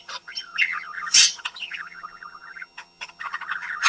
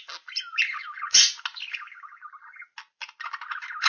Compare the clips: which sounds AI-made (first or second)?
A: first